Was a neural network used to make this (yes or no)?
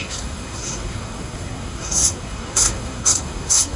yes